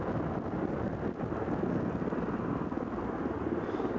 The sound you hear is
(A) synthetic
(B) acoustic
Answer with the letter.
B